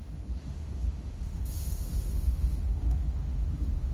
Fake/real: fake